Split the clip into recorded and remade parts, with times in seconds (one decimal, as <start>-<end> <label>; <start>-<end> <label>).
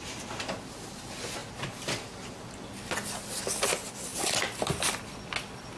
0.0-5.8 recorded